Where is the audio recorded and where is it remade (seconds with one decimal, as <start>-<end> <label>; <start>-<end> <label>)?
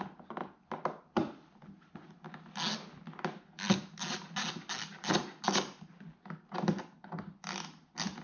0.0-8.2 recorded